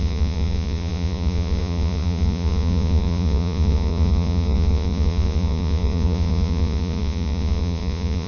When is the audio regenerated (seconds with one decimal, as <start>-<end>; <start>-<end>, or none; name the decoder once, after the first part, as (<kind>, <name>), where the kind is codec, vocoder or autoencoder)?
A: 0.0-8.3 (vocoder, Vocos)